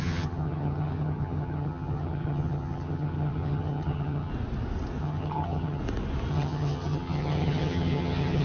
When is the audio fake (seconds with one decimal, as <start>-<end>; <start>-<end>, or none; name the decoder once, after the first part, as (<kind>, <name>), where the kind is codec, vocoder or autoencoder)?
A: 0.0-4.3 (vocoder, HiFi-GAN); 5.0-5.8; 6.3-8.4